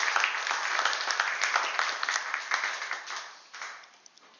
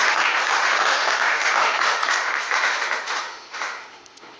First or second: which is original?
first